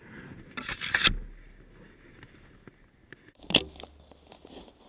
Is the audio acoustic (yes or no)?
yes